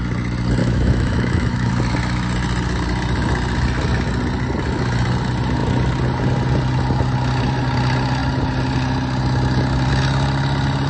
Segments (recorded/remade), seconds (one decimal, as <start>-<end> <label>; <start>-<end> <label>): 0.0-0.6 recorded; 0.6-1.7 remade; 1.7-10.9 recorded